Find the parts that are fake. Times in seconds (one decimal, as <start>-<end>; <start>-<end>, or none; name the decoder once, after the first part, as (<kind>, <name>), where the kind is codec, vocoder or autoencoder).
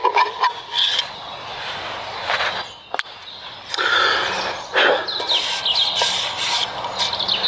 none